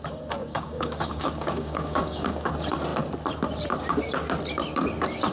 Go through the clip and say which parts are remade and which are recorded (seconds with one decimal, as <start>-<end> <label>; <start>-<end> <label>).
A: 0.0-0.4 recorded; 0.4-2.5 remade; 2.5-5.3 recorded